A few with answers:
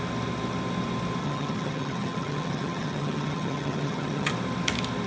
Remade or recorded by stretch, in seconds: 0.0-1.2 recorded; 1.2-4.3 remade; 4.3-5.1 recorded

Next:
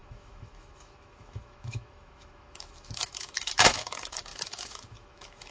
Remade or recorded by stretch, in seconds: 0.0-5.5 remade

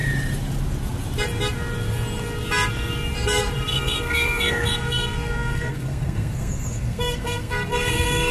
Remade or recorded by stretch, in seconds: 0.0-3.7 recorded; 3.7-8.3 remade

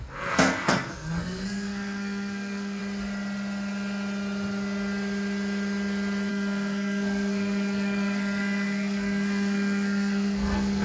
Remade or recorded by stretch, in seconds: 0.0-2.8 remade; 2.8-6.3 recorded; 6.3-10.8 remade

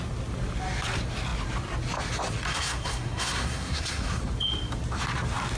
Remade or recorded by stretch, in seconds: 0.0-2.5 recorded; 2.5-4.2 remade; 4.2-5.6 recorded